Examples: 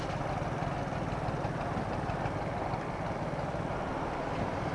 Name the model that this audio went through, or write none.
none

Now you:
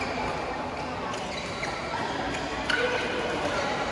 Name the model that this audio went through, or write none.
none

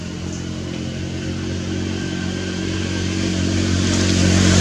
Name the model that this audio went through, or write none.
none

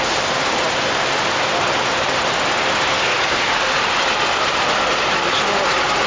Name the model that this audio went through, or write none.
none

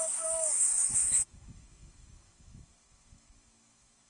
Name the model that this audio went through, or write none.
autoencoder, DAC-VAE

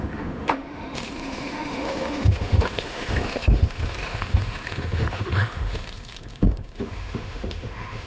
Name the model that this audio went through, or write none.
autoencoder, DAC-VAE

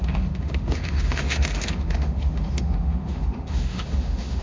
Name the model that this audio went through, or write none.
autoencoder, DAC-VAE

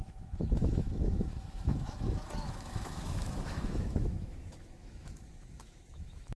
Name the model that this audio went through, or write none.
autoencoder, DAC-VAE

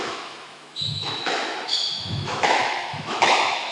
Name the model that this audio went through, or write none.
autoencoder, DAC-VAE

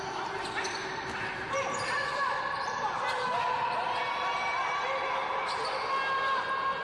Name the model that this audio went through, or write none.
none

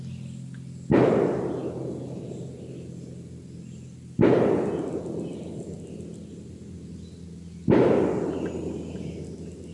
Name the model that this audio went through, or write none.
none